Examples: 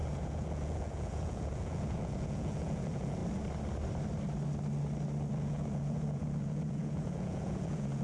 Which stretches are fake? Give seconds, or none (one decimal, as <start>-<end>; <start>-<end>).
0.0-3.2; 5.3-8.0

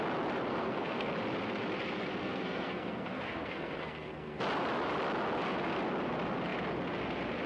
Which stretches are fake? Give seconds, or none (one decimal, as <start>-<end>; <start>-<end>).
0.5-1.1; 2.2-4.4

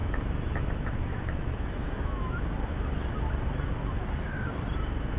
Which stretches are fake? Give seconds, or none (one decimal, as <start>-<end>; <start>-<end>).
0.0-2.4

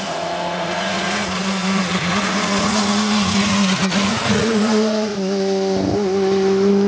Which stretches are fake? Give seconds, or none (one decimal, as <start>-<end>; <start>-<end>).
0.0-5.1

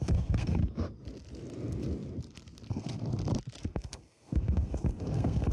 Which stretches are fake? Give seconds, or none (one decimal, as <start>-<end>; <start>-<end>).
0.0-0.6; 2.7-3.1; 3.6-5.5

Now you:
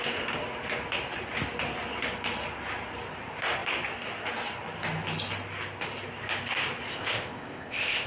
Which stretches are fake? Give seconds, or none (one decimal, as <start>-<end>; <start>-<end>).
6.9-8.1

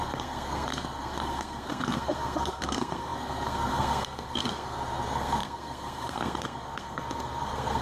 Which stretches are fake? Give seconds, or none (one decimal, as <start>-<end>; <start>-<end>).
0.0-7.8

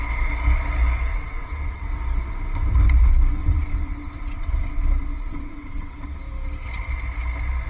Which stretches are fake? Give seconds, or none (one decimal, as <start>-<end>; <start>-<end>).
1.1-1.9; 3.4-6.2